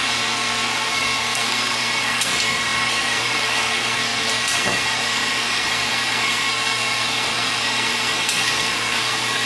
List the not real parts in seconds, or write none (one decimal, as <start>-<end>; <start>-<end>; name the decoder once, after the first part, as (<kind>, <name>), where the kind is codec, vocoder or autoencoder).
0.0-9.5 (codec, SNAC)